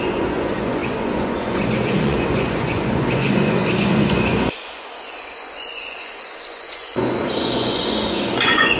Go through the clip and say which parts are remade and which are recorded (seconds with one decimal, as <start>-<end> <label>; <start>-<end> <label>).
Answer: 0.0-8.8 remade

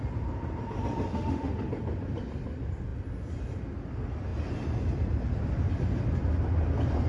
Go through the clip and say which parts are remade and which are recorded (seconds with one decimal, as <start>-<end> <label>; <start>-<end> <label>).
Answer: 0.0-1.1 recorded; 1.1-1.7 remade; 1.7-7.1 recorded